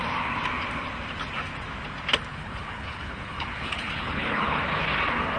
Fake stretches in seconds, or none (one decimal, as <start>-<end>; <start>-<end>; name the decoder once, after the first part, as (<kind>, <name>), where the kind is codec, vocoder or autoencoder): 2.3-4.6 (codec, HILCodec)